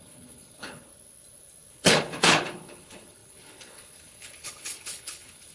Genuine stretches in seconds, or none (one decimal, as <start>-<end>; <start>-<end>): 0.9-1.7